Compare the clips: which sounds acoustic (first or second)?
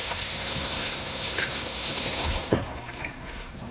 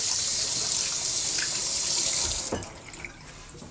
second